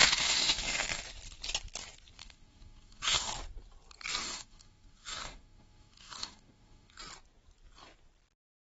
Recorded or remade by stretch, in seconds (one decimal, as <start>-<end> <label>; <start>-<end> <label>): 0.0-1.0 remade; 1.0-2.2 recorded; 2.2-3.3 remade; 3.3-4.2 recorded; 4.2-7.0 remade; 7.0-8.7 recorded